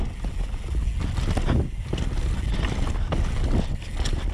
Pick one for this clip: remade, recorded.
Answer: recorded